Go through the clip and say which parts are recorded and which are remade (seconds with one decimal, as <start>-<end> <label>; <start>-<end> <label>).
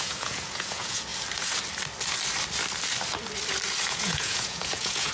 0.0-1.1 remade; 1.1-3.9 recorded; 3.9-5.1 remade